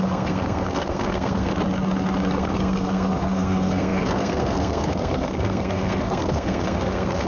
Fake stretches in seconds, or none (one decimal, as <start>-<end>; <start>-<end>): 0.0-1.5; 2.3-7.3